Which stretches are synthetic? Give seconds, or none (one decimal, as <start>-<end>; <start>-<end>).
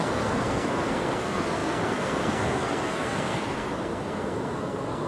0.0-5.1